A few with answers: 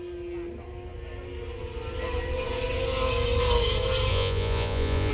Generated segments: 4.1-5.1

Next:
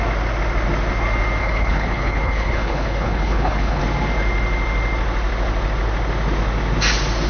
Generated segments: 1.4-3.8

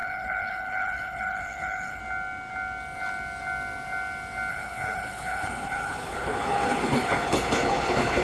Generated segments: 0.0-2.0; 4.5-8.2

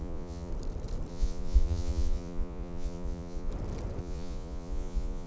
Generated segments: 0.0-0.5; 1.1-3.5; 4.0-5.3

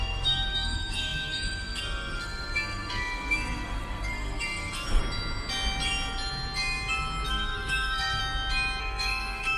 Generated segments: 0.0-5.0; 7.3-8.2; 8.8-9.6

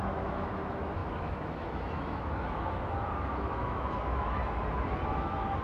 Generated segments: 0.0-4.4; 5.1-5.6

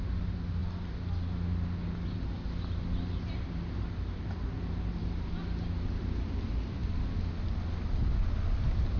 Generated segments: none